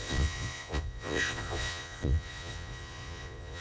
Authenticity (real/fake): fake